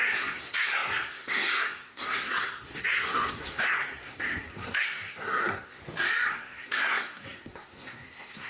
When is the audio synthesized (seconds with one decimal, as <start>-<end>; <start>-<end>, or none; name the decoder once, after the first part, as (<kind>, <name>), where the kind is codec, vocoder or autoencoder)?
0.0-5.8 (codec, SNAC); 6.3-8.5